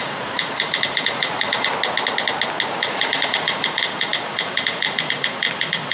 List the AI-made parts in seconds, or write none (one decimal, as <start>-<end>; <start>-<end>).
0.0-1.7; 2.7-5.9